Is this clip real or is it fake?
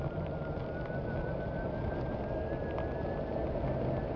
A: real